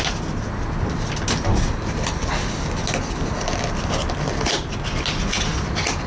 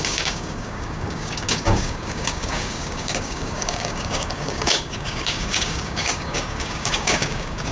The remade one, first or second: second